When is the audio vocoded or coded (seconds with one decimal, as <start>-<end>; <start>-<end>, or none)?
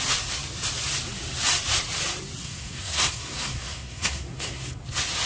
2.4-4.8